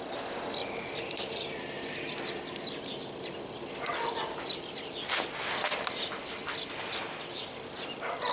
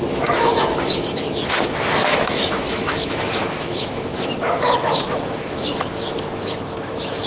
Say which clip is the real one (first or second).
first